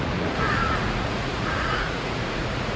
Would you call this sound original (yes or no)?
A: no